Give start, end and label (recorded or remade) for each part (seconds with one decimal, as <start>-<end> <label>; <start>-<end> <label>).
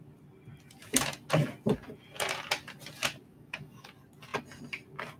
0.0-3.3 recorded; 3.3-3.9 remade; 3.9-5.2 recorded